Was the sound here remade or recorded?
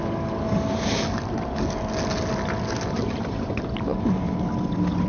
recorded